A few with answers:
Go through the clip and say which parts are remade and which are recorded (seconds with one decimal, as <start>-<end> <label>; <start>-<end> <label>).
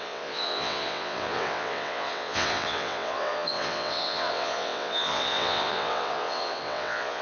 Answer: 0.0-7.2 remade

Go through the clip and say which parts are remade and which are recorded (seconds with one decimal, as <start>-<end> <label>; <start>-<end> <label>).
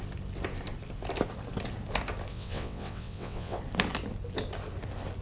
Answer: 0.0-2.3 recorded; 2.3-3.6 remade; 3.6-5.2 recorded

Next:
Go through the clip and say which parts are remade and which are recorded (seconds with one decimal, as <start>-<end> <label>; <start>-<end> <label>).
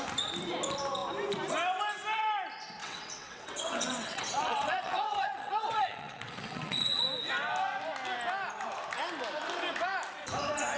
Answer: 0.0-2.8 recorded; 2.8-7.0 remade; 7.0-10.8 recorded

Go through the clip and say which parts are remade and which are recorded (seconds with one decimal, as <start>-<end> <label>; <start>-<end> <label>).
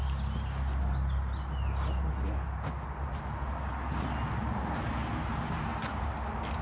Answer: 0.0-6.6 recorded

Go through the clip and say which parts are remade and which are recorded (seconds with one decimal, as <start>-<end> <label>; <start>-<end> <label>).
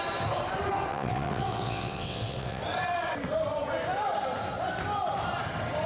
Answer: 0.0-0.9 recorded; 0.9-2.6 remade; 2.6-5.9 recorded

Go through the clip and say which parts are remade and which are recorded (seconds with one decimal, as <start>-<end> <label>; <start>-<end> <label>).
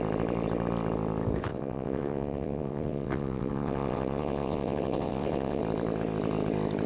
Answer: 0.0-1.5 recorded; 1.5-5.6 remade; 5.6-6.9 recorded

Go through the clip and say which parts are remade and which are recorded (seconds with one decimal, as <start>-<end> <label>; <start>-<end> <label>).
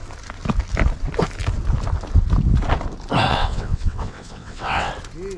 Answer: 0.0-3.3 recorded; 3.3-4.9 remade; 4.9-5.4 recorded